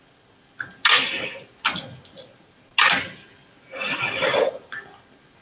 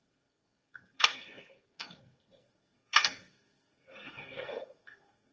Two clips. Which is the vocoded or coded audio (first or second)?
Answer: second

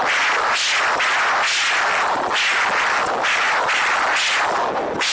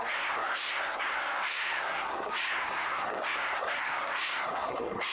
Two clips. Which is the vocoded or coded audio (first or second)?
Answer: second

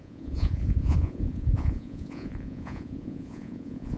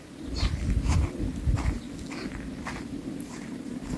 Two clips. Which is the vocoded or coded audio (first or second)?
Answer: first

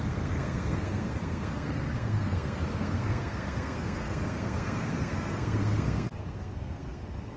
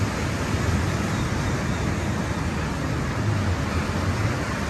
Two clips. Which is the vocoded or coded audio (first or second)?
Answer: first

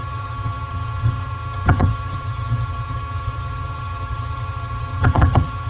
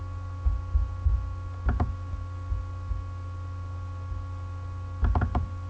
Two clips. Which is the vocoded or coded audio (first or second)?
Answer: first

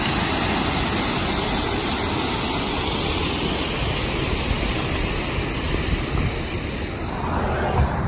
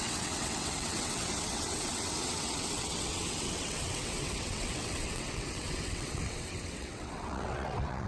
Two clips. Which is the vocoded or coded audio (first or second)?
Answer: second